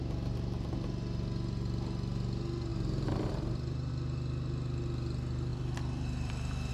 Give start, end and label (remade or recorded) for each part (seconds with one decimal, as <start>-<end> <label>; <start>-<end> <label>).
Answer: 0.0-2.7 recorded; 2.7-3.9 remade; 3.9-5.5 recorded; 5.5-6.7 remade